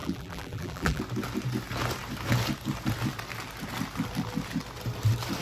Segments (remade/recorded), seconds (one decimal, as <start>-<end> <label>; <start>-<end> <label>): 0.0-1.0 remade; 1.0-5.4 recorded